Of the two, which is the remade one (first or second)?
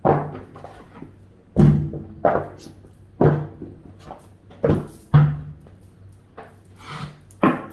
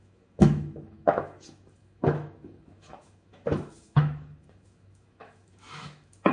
second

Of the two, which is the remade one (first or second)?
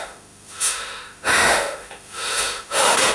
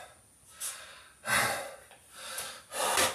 first